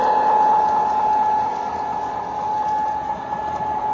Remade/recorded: recorded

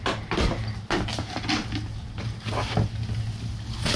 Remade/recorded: recorded